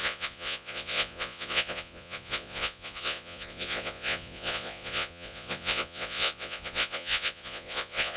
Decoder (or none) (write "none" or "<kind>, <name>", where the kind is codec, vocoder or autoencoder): vocoder, Vocos